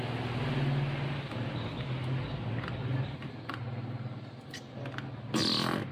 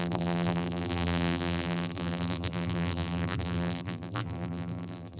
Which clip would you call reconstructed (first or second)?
second